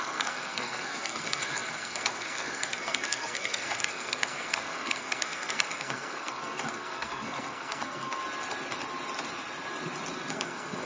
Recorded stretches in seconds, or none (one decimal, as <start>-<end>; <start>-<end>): 8.2-10.3